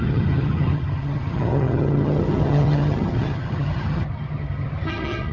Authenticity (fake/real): fake